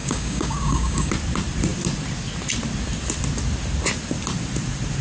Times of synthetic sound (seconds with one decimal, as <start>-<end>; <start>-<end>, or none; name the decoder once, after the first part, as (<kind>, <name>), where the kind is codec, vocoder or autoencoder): 0.0-1.1 (codec, DAC)